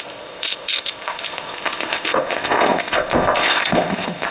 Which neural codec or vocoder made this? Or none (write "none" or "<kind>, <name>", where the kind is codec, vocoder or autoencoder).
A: codec, ZipCodec